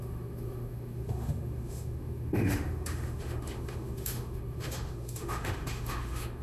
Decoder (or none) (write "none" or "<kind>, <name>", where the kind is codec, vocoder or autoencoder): autoencoder, DAC-VAE